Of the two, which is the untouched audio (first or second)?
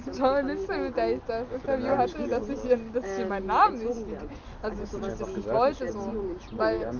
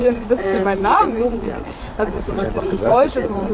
first